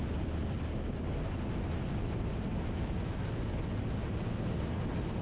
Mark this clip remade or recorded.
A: recorded